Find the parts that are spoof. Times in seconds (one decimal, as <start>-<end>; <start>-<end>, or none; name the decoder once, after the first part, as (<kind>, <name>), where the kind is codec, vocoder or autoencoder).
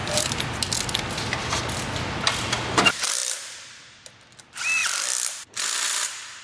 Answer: none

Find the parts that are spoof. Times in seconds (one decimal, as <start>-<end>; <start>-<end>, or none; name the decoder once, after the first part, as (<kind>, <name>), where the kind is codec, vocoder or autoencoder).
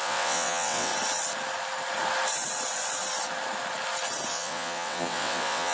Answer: 0.0-0.9 (vocoder, WaveNeXt); 4.3-5.7